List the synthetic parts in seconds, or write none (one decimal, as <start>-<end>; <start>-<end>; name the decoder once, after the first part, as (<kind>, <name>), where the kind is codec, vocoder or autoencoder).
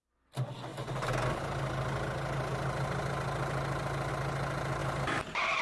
4.8-5.6 (vocoder, BigVGAN v2)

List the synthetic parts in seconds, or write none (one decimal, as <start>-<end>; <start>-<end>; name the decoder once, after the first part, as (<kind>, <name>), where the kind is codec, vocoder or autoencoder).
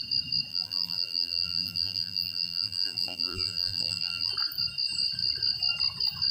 0.5-4.3 (vocoder, BigVGAN v2)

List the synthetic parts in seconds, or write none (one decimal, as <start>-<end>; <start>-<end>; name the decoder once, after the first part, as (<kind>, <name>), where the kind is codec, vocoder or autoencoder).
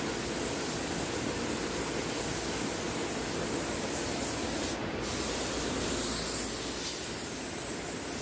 0.4-3.1 (vocoder, BigVGAN v2)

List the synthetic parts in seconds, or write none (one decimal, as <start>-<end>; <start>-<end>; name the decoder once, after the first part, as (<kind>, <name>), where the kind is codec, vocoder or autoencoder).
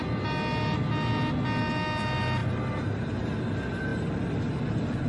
2.4-3.3 (vocoder, BigVGAN v2)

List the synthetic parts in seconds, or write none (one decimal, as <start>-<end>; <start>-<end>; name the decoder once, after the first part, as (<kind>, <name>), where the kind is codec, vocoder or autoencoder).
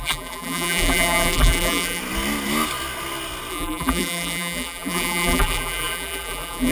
0.0-2.0 (vocoder, BigVGAN v2); 3.5-6.7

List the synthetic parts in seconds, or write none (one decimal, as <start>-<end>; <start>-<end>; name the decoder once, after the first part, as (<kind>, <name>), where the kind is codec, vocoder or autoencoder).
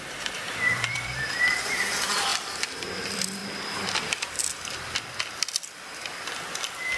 0.0-3.4 (vocoder, BigVGAN v2); 4.1-7.0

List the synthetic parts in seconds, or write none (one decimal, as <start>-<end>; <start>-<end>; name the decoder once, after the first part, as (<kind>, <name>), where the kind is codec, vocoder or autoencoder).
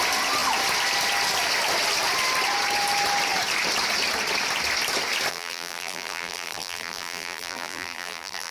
5.3-8.5 (vocoder, BigVGAN v2)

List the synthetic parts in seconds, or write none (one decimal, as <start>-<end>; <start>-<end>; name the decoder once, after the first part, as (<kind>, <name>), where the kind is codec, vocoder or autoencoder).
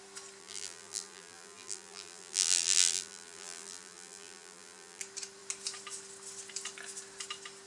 0.4-5.0 (vocoder, BigVGAN v2)